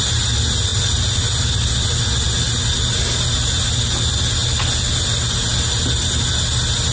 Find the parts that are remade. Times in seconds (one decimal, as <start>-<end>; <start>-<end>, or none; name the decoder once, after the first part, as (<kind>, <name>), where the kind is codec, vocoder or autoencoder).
none